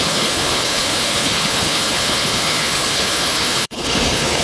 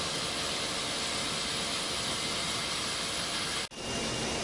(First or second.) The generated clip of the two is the first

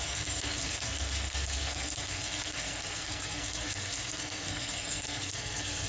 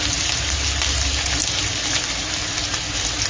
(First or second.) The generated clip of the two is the first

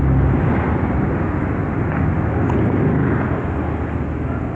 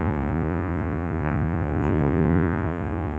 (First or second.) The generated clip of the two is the second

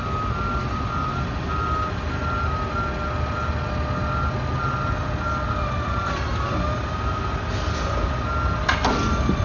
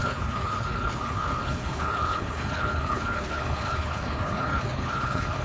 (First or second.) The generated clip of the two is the second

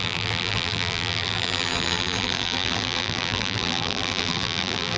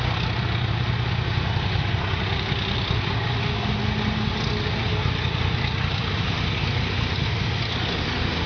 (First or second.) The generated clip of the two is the first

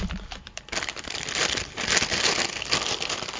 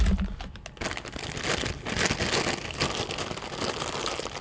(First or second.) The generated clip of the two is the first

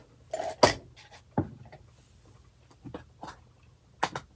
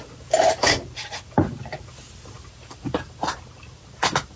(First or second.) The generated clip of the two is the second